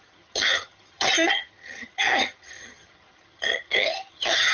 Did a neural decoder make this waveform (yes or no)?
yes